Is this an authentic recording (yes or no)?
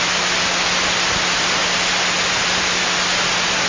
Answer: yes